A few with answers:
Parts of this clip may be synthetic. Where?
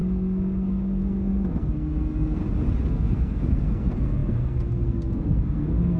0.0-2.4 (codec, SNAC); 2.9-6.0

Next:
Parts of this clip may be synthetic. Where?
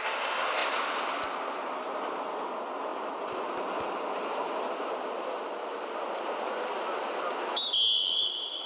none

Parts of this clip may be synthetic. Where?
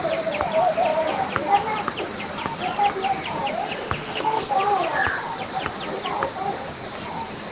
4.0-4.5 (codec, SNAC)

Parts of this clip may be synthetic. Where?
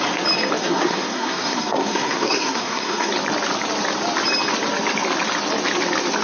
0.6-3.1 (codec, SNAC)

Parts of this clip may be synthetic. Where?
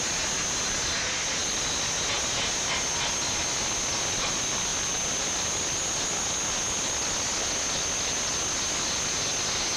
none